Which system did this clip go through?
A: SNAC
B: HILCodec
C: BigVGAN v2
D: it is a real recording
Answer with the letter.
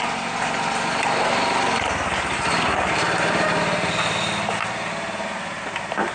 D